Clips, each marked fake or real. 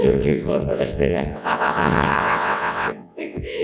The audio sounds fake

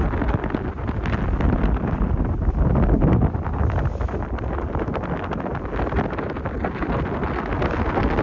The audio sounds real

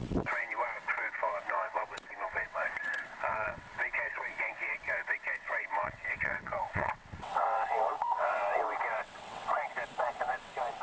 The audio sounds fake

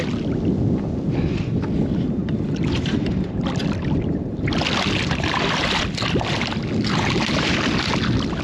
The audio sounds real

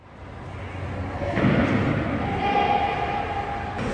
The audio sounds real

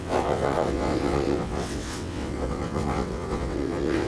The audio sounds fake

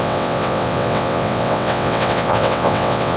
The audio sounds fake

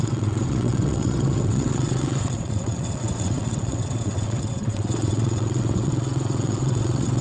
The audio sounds fake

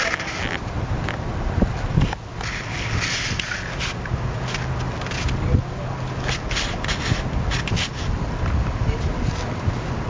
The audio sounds real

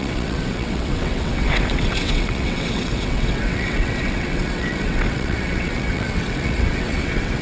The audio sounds fake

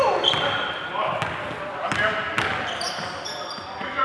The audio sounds real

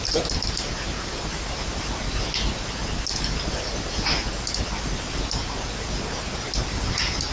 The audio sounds real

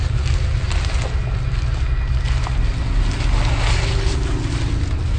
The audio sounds real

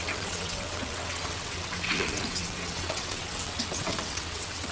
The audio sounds fake